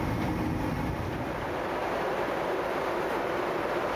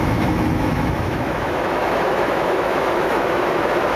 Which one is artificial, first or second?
second